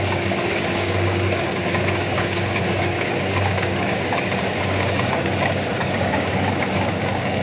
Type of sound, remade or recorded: remade